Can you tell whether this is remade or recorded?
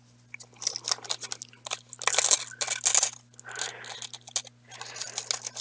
recorded